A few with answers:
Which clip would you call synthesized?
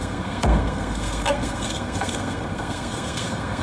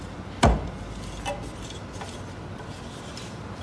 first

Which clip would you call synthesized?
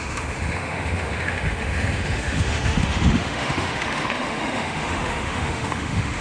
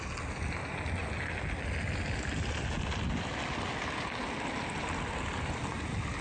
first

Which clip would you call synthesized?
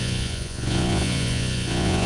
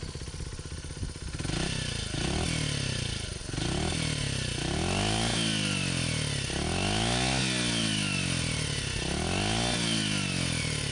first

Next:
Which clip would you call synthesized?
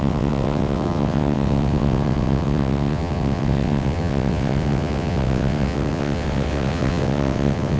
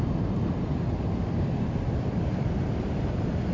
first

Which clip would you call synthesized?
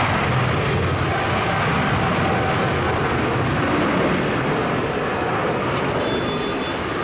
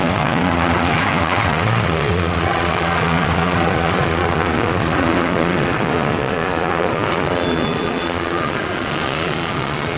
second